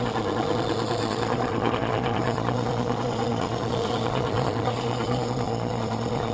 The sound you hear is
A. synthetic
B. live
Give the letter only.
A